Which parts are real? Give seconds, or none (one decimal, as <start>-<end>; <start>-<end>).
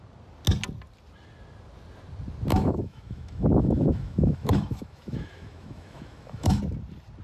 0.0-2.5; 6.6-7.2